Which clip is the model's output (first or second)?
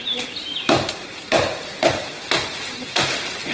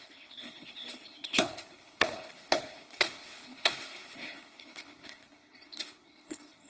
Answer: second